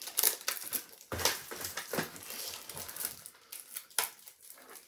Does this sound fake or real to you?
real